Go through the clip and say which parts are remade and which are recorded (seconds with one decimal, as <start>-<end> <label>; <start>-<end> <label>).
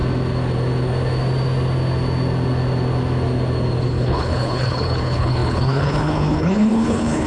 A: 0.0-3.8 recorded; 3.8-7.3 remade